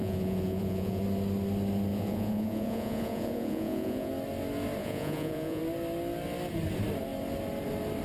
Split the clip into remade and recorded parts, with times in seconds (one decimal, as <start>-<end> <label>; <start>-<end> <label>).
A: 0.0-1.0 remade; 1.0-1.9 recorded; 1.9-4.1 remade; 4.1-4.8 recorded; 4.8-5.6 remade; 5.6-8.0 recorded